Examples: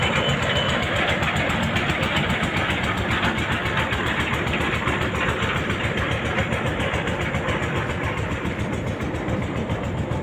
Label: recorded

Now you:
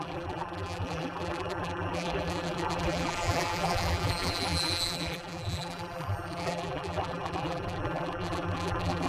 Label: remade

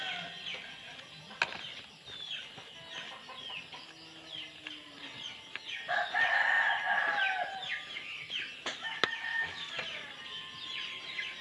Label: recorded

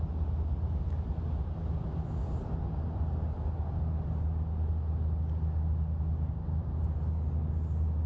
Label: recorded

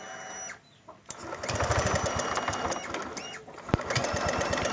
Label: recorded